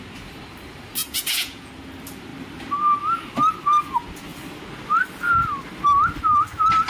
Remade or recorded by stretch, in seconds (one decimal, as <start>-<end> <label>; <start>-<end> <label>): 0.0-1.0 recorded; 1.0-1.7 remade; 1.7-6.9 recorded